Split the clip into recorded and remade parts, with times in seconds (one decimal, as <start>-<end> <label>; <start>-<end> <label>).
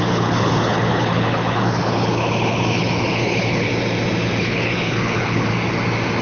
0.0-3.7 remade; 3.7-4.4 recorded; 4.4-5.5 remade; 5.5-6.2 recorded